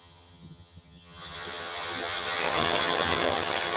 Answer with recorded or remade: remade